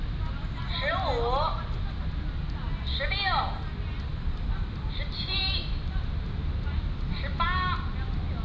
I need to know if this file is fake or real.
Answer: real